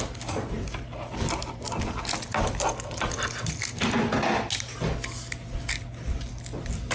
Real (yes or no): yes